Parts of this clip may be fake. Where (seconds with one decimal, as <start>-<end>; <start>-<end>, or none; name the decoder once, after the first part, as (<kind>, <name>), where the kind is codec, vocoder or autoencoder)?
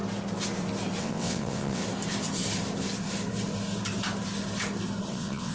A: 1.0-1.8 (vocoder, WaveNeXt); 5.1-5.5